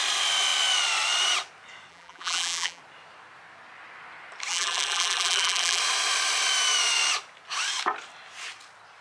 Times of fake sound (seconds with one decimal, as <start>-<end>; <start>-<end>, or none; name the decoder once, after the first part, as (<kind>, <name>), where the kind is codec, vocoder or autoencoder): 1.9-2.8 (vocoder, BigVGAN v2); 4.5-5.8